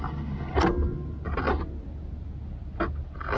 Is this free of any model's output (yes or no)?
yes